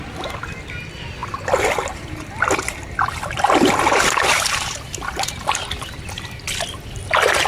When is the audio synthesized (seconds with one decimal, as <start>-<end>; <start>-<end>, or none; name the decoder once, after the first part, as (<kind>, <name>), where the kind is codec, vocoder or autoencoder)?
none